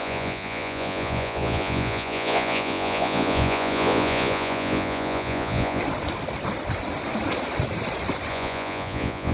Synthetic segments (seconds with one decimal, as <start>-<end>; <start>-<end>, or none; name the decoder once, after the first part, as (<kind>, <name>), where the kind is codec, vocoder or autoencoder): 0.0-5.8 (vocoder, Vocos); 8.3-9.3